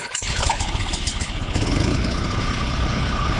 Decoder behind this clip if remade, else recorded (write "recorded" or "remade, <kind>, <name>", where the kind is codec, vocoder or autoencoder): remade, codec, HILCodec